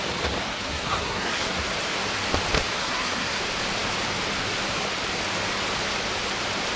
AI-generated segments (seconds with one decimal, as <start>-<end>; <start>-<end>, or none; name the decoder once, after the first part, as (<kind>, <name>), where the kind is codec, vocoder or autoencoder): 0.4-1.6 (codec, SNAC); 2.8-3.4